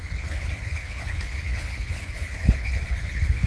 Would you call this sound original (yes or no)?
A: no